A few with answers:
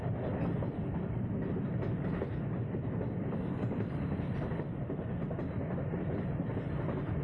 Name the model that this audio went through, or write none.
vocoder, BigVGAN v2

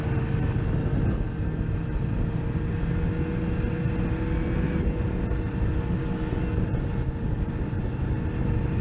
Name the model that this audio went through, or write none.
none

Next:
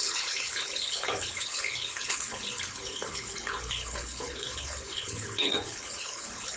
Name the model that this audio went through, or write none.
codec, HILCodec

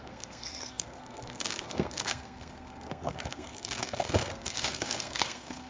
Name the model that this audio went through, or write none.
codec, SNAC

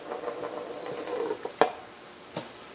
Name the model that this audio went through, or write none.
none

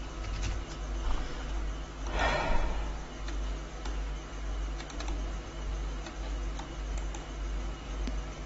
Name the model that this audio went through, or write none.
none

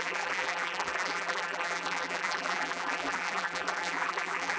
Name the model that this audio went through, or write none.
vocoder, BigVGAN v2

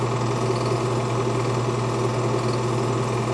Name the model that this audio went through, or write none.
none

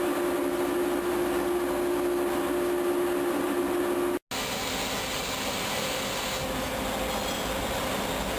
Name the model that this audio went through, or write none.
none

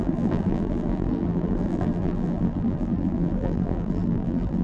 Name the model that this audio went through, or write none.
vocoder, BigVGAN v2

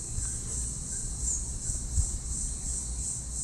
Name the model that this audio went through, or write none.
none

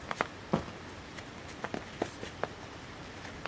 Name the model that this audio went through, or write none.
none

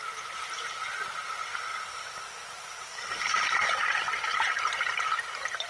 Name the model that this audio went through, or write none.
vocoder, BigVGAN v2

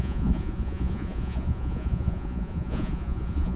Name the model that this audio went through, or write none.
vocoder, Vocos